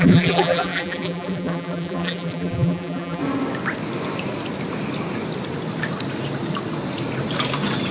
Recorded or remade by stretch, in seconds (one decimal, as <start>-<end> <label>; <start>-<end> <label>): 0.0-3.2 remade; 3.2-7.9 recorded